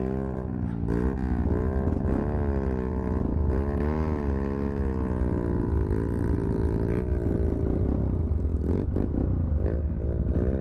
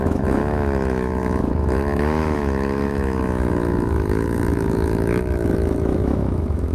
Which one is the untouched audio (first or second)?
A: first